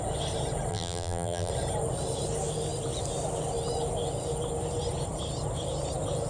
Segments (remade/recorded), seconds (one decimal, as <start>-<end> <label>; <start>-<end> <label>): 0.0-0.7 recorded; 0.7-1.5 remade; 1.5-6.3 recorded